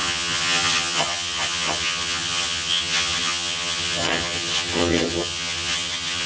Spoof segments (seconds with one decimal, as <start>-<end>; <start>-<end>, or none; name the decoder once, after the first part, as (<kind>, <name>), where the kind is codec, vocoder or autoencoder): 0.0-6.3 (vocoder, HiFi-GAN)